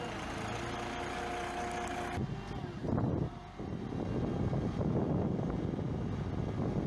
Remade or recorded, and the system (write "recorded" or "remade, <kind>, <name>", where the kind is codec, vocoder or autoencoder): recorded